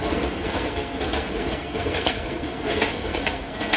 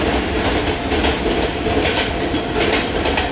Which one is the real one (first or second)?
second